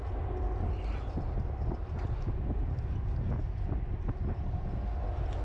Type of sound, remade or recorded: recorded